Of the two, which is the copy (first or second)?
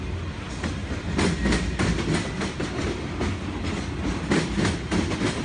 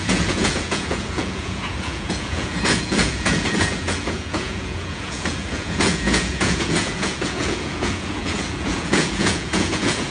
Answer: second